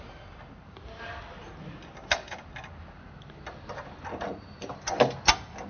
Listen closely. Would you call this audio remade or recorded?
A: recorded